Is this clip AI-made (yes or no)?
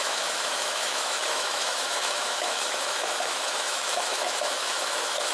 yes